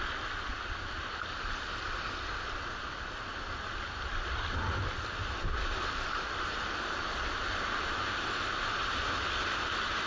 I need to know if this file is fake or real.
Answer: real